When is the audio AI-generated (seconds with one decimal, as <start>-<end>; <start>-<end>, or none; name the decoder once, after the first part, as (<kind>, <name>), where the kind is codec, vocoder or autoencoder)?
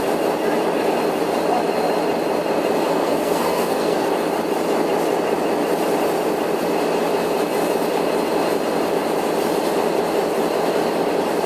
2.9-4.1 (codec, SNAC)